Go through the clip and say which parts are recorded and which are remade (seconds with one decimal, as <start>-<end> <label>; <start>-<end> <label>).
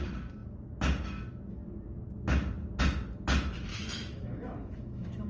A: 0.0-3.7 recorded; 3.7-5.3 remade